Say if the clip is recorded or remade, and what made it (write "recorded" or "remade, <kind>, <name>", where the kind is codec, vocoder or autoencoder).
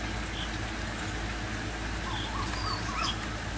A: recorded